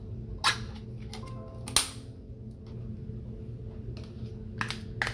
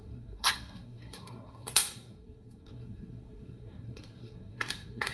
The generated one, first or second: second